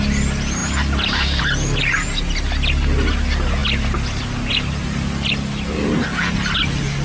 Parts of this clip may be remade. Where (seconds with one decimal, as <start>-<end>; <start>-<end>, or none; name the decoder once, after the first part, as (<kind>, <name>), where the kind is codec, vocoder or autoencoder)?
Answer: none